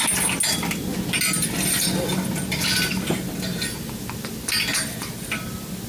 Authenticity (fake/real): real